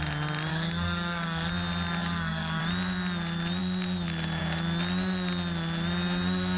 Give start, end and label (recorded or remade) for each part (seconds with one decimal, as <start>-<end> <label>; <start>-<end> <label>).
0.0-0.5 recorded; 0.5-1.5 remade; 1.5-2.0 recorded; 2.0-2.6 remade; 2.6-6.6 recorded